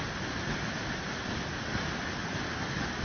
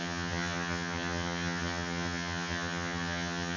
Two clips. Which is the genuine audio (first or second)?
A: first